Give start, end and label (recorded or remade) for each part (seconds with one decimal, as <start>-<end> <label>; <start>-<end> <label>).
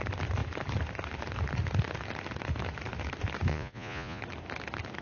0.0-3.5 recorded; 3.5-4.2 remade; 4.2-5.0 recorded